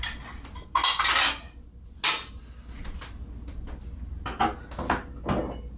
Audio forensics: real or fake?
real